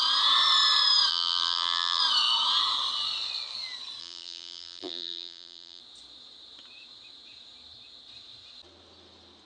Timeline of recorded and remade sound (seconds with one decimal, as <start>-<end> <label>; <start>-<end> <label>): 0.0-1.1 recorded; 1.1-2.0 remade; 2.0-4.0 recorded; 4.0-5.8 remade; 5.8-9.5 recorded